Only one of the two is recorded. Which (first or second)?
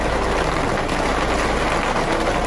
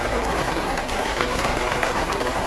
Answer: first